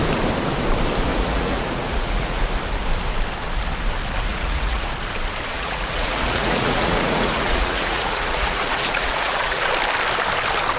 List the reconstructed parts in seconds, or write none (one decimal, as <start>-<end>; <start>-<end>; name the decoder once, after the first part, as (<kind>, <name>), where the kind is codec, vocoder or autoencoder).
1.1-2.4 (vocoder, Vocos); 4.3-4.9; 5.5-9.7